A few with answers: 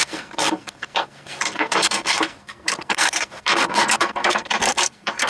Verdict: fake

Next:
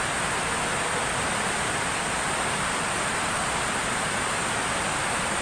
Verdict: real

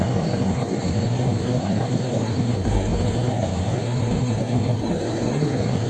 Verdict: fake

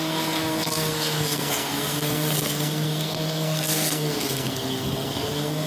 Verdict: fake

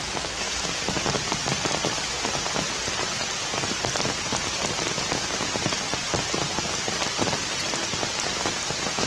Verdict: real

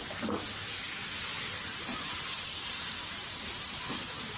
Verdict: real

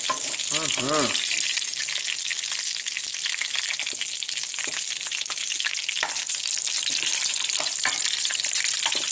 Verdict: real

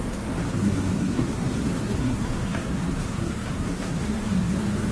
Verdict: fake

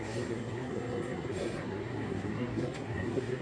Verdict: fake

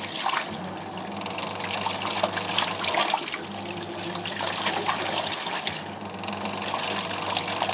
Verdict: real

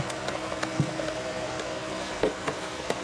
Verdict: fake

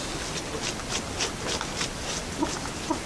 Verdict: real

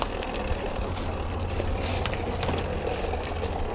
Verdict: real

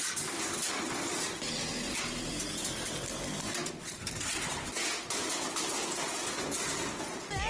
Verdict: real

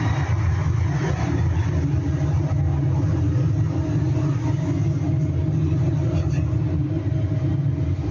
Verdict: real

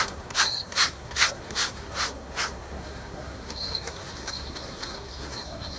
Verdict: fake